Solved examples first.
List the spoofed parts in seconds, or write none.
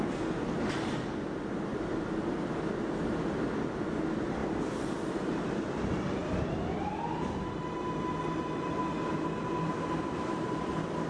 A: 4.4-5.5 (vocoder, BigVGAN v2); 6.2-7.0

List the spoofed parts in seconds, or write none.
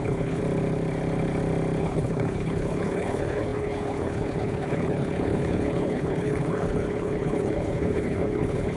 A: 0.0-0.4 (codec, HILCodec); 1.8-8.8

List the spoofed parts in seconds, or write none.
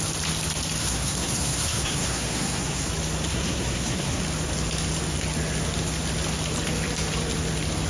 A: 0.8-2.9 (codec, SNAC); 3.3-4.2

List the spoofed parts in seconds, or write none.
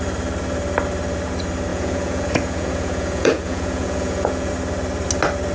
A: 1.7-4.5 (vocoder, Vocos)